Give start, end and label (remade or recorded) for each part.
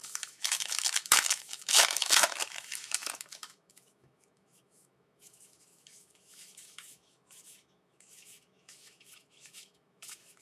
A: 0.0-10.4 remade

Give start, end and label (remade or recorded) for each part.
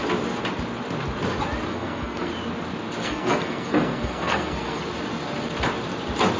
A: 0.0-1.7 recorded; 1.7-2.3 remade; 2.3-3.0 recorded; 3.0-4.8 remade; 4.8-6.4 recorded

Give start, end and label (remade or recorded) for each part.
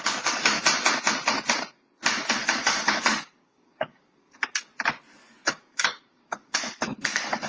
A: 0.0-0.6 remade; 0.6-2.4 recorded; 2.4-4.7 remade; 4.7-5.2 recorded; 5.2-7.5 remade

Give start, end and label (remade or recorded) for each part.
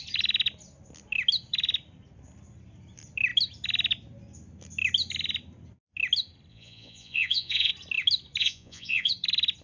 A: 0.0-6.5 recorded; 6.5-7.7 remade; 7.7-8.4 recorded; 8.4-9.1 remade; 9.1-9.6 recorded